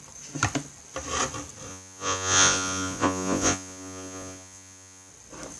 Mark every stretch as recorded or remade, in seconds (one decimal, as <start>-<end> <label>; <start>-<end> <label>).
0.0-1.7 recorded; 1.7-5.1 remade; 5.1-5.6 recorded